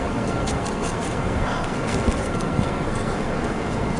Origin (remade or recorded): remade